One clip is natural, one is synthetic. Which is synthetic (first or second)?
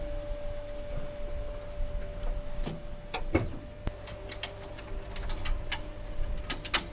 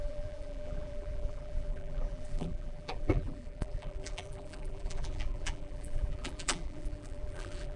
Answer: second